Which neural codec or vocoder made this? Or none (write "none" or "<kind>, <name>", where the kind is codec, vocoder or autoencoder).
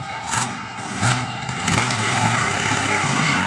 codec, SNAC